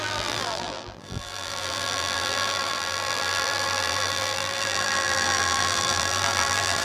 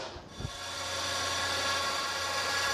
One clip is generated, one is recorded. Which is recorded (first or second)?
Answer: second